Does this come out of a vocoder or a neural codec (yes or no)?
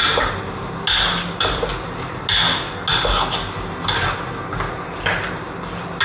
no